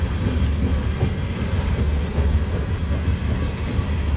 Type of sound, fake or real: real